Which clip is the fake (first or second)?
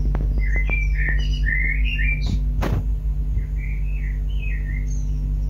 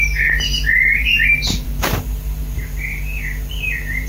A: second